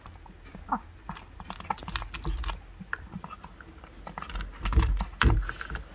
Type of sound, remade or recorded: recorded